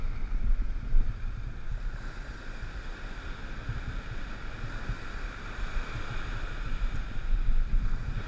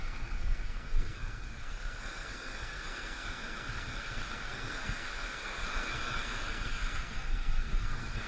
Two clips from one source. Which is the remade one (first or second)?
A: second